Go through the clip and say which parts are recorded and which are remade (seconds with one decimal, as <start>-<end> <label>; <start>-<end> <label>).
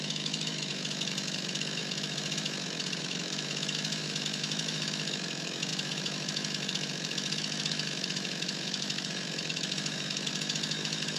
0.0-11.2 remade